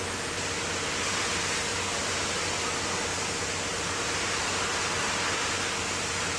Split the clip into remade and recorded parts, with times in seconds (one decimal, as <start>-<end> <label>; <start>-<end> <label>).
0.0-1.7 recorded; 1.7-4.8 remade; 4.8-6.4 recorded